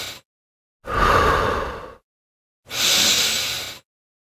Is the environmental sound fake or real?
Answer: real